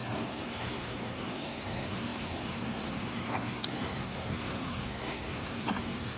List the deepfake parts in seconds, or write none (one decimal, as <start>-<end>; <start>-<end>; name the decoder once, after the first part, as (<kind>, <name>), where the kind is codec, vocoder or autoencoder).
0.0-6.2 (codec, SNAC)